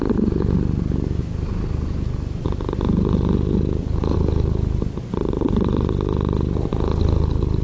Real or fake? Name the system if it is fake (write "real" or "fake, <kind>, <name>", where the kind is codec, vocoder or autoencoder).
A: real